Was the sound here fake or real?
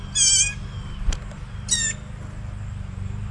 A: real